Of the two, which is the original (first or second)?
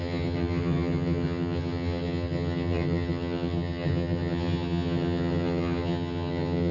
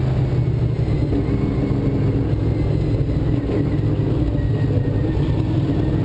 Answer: second